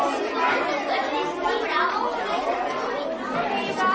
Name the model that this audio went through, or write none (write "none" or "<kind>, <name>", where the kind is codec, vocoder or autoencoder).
none